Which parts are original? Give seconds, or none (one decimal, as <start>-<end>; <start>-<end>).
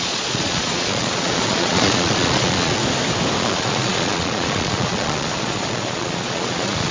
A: 2.8-3.4